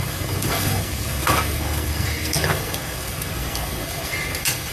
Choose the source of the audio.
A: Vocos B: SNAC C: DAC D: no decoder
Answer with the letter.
B